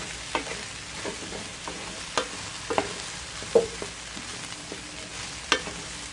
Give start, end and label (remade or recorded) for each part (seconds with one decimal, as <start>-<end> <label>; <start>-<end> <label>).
0.0-6.1 recorded